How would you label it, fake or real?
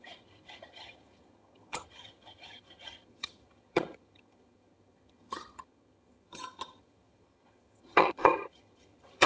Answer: fake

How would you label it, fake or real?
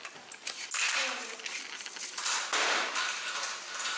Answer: real